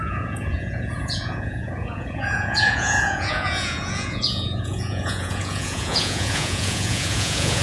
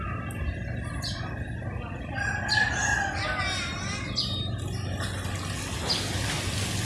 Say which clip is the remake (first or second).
first